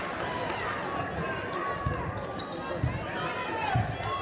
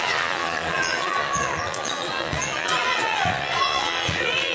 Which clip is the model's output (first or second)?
second